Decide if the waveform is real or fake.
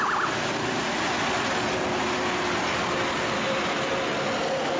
real